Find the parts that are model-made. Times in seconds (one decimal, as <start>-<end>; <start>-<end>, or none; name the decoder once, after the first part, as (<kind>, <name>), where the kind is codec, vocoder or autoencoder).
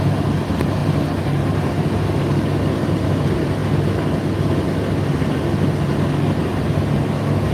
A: none